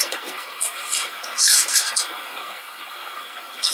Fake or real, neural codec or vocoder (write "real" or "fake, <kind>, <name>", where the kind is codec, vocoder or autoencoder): fake, codec, SNAC